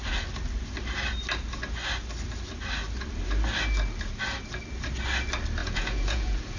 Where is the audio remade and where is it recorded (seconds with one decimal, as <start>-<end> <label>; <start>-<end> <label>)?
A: 0.0-5.6 recorded; 5.6-6.6 remade